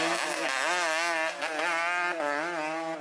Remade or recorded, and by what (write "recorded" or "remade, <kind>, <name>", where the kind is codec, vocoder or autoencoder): recorded